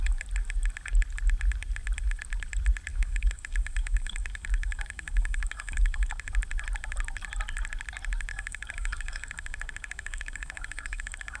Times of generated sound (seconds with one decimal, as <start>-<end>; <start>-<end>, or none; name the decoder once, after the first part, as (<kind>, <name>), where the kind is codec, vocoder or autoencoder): 2.9-6.3 (codec, DAC); 8.3-11.4